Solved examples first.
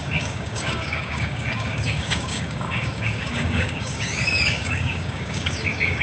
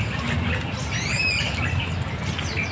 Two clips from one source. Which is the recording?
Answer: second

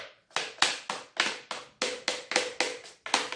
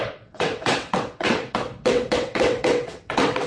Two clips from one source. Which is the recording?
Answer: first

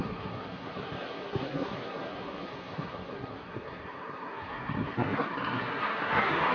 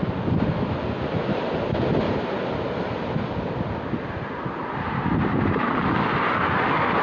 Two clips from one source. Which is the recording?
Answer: second